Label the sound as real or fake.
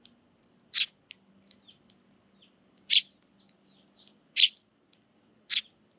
real